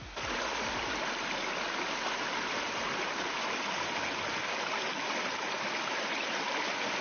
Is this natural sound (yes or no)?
yes